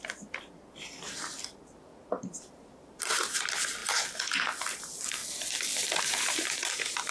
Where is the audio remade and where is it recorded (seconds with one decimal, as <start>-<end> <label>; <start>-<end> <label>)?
0.0-1.9 remade; 1.9-2.5 recorded; 2.5-3.8 remade; 3.8-4.6 recorded; 4.6-5.2 remade; 5.2-6.0 recorded; 6.0-7.1 remade